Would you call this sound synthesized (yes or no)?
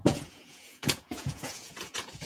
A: yes